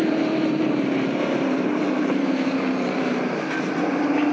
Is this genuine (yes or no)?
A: no